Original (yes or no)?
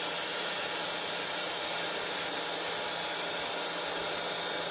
yes